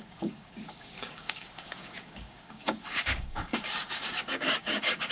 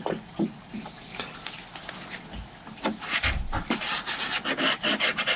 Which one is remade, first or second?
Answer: first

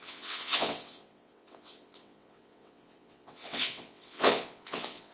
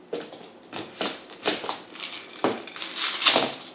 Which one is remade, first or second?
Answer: first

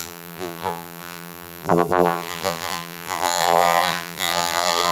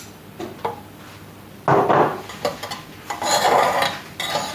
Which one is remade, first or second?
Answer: first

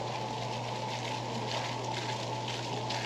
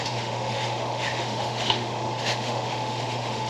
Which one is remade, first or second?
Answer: second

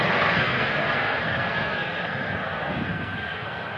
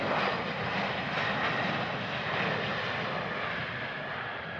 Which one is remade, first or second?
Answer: first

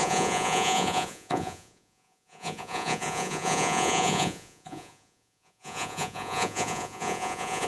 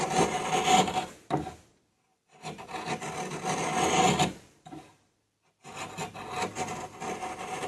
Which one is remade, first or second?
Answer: first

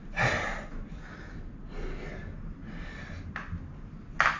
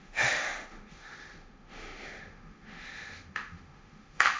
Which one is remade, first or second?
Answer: second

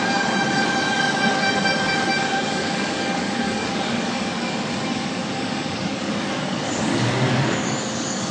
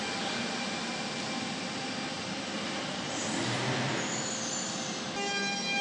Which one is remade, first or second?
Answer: first